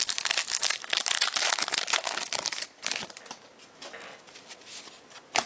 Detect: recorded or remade recorded